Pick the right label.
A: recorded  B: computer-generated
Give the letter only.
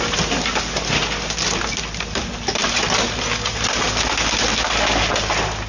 A